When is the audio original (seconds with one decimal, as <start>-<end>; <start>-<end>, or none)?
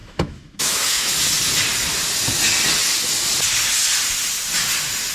1.1-5.1